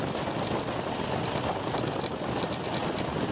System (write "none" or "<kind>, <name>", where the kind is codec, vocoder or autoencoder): none